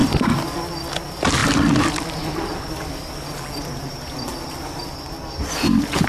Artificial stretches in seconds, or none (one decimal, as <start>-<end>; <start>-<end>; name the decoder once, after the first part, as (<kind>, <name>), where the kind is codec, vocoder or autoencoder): none